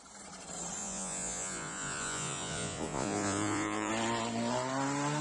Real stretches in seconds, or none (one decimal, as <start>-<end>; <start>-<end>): 0.0-0.8; 3.9-5.2